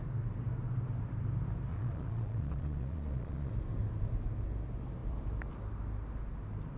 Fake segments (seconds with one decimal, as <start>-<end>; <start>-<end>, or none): 1.7-3.5